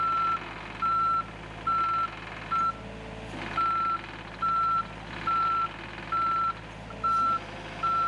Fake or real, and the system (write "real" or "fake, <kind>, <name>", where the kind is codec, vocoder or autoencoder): real